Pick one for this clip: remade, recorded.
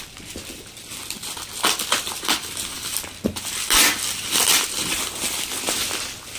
recorded